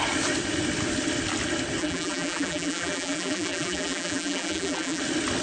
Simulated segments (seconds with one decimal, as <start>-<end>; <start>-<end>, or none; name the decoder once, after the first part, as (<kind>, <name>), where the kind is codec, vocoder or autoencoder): 1.8-5.0 (vocoder, BigVGAN v2)